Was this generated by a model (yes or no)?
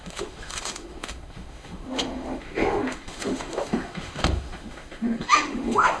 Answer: yes